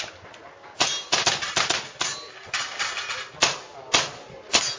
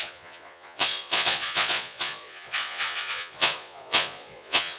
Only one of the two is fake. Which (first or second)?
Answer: second